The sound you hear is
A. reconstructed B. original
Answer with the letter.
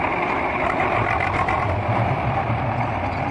A